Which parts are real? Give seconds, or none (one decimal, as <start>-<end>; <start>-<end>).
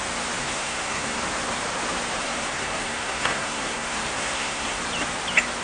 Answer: 0.0-0.4; 1.2-2.2; 4.8-5.6